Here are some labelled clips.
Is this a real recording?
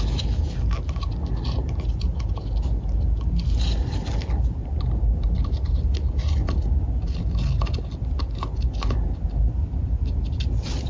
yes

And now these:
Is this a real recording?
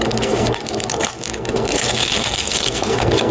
no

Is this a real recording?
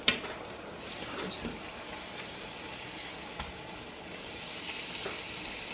yes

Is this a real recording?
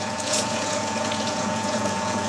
no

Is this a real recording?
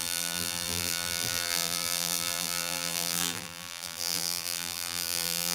no